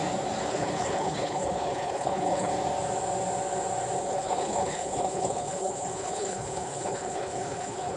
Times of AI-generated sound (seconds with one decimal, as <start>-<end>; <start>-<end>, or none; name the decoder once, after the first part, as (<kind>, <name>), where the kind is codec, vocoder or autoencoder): 0.5-2.5 (codec, HILCodec); 4.0-8.0